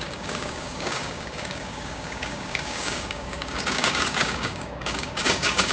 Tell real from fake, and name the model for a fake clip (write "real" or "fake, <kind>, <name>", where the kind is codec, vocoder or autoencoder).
fake, codec, DAC